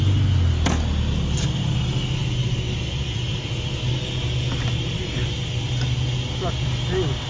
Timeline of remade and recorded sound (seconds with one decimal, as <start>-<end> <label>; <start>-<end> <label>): 0.0-7.3 recorded